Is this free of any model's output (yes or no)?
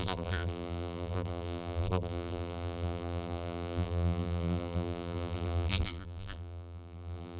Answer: no